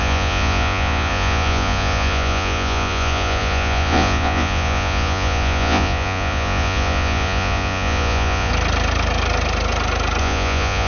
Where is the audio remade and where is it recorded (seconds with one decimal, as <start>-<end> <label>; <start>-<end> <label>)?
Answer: 0.0-8.5 remade; 8.5-10.2 recorded; 10.2-10.9 remade